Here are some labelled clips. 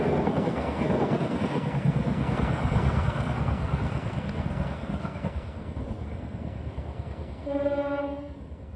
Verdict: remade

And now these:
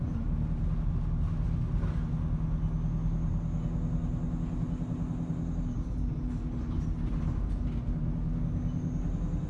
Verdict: recorded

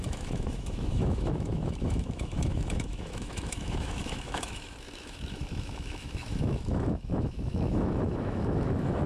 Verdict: remade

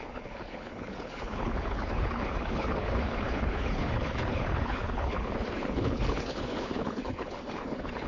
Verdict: remade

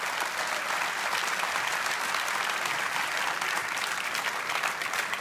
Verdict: recorded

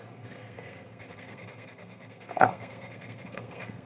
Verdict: remade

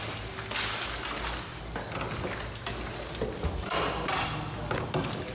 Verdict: recorded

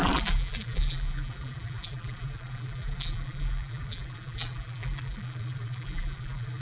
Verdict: remade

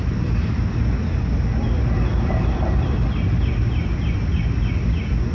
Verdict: recorded